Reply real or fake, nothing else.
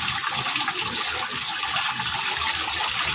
real